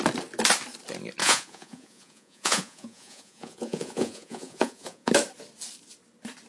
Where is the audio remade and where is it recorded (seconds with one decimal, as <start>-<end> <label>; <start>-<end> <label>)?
0.0-1.2 recorded; 1.2-5.1 remade; 5.1-6.5 recorded